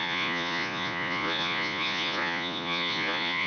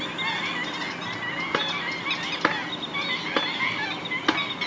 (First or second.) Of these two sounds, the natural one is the second